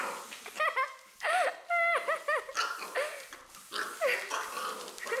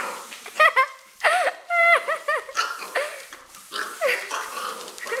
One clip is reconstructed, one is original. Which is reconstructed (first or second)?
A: second